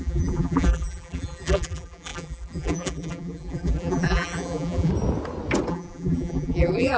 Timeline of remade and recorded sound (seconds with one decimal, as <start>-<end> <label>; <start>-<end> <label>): 0.0-4.9 remade; 4.9-5.7 recorded; 5.7-7.0 remade